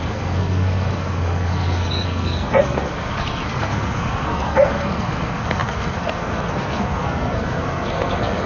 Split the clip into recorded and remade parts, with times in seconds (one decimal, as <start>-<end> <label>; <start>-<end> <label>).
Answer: 0.0-8.5 remade